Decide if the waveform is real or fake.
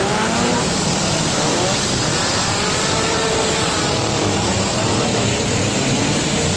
fake